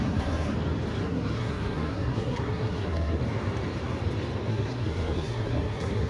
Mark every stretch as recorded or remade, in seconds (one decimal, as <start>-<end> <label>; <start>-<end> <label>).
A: 0.0-0.5 remade; 0.5-1.0 recorded; 1.0-3.2 remade; 3.2-4.5 recorded; 4.5-6.1 remade